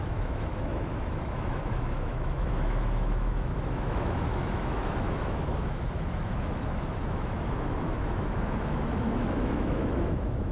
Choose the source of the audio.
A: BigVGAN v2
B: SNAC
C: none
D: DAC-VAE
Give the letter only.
D